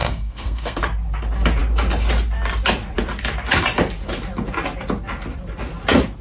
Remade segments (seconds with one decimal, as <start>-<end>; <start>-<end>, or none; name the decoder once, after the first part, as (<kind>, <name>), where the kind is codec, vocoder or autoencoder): 0.0-0.8 (codec, SNAC)